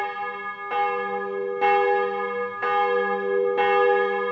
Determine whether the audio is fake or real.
real